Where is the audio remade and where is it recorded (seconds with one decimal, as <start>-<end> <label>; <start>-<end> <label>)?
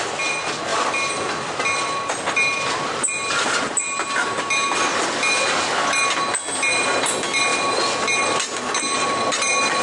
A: 0.0-9.8 recorded